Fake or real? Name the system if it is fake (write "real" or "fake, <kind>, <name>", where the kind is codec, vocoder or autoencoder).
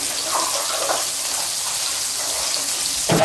real